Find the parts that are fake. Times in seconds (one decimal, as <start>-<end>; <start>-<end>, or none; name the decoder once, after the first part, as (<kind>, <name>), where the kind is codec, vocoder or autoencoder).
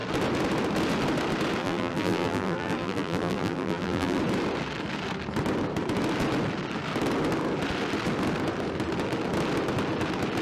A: 1.6-4.2 (vocoder, BigVGAN v2)